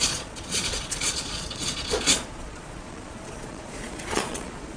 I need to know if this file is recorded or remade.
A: remade